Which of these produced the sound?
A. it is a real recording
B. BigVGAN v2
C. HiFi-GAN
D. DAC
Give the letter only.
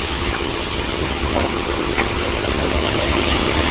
C